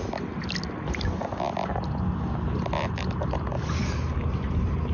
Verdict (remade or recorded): recorded